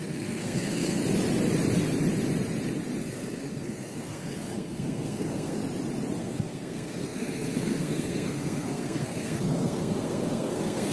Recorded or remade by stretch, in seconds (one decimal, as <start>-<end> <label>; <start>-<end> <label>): 0.0-1.0 remade; 1.0-3.0 recorded; 3.0-5.6 remade; 5.6-6.2 recorded; 6.2-10.9 remade